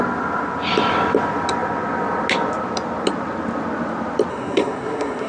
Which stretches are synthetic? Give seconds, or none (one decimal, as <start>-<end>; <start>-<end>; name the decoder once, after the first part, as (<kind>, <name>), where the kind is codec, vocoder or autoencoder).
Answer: 4.3-5.3 (codec, SNAC)